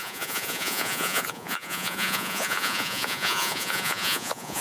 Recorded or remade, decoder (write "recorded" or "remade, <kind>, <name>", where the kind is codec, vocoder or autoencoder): remade, vocoder, Vocos